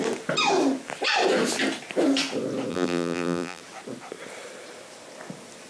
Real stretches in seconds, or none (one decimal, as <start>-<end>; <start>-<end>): 0.0-2.7; 3.6-5.7